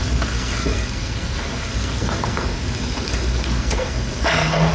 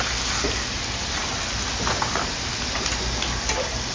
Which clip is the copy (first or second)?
first